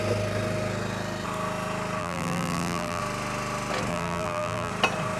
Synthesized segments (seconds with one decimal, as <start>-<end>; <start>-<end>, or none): 2.0-3.0; 3.9-4.7